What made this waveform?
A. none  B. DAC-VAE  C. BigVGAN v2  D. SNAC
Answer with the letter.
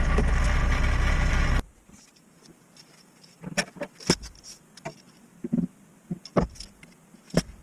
A